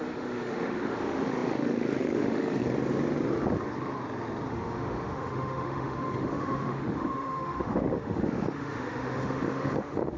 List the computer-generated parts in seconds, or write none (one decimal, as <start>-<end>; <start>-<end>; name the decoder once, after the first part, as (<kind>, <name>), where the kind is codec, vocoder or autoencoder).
0.0-2.6 (autoencoder, DAC-VAE); 4.5-10.2